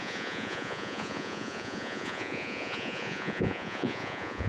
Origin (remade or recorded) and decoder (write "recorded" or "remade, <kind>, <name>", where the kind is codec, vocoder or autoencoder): remade, vocoder, Vocos